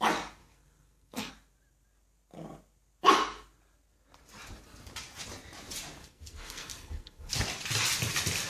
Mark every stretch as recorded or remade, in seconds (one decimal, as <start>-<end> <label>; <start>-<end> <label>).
0.0-0.4 recorded; 0.4-1.3 remade; 1.3-6.0 recorded; 6.0-7.3 remade; 7.3-8.5 recorded